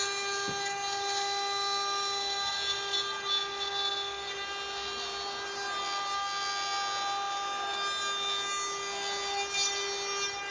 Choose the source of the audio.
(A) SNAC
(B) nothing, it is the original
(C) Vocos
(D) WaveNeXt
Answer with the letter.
B